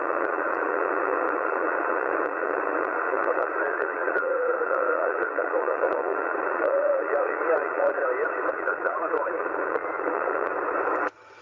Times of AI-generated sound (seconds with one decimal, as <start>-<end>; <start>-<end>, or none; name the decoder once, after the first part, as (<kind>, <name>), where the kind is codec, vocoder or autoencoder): 0.0-8.0 (vocoder, Vocos); 8.5-10.5